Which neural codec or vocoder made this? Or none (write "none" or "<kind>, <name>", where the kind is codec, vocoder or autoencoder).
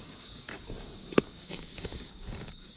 codec, DAC